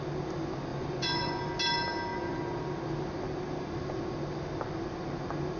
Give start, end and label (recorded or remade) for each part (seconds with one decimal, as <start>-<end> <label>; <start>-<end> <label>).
0.0-0.7 recorded; 0.7-1.4 remade; 1.4-2.1 recorded; 2.1-2.6 remade; 2.6-5.6 recorded